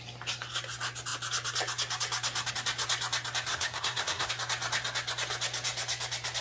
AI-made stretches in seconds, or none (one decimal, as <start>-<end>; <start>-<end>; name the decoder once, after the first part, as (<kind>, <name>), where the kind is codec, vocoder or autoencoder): 3.5-4.3 (codec, SNAC)